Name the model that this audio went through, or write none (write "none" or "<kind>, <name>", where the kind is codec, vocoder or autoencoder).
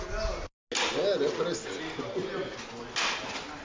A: none